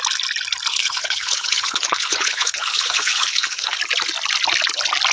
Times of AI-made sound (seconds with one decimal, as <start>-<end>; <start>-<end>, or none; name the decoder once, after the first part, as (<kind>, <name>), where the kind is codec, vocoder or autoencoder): 0.7-3.8 (codec, HILCodec)